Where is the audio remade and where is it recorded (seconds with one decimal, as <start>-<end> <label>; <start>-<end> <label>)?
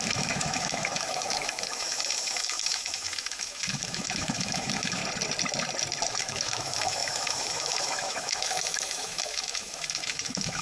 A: 0.0-5.0 remade; 5.0-6.1 recorded; 6.1-10.6 remade